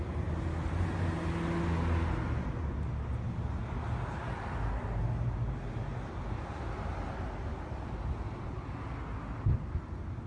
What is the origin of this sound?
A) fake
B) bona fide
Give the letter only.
B